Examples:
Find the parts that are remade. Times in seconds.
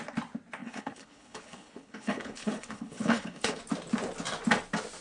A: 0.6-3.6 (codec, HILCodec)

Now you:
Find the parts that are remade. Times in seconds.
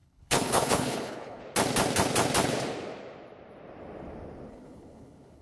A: 0.0-1.4 (codec, HILCodec); 4.5-5.4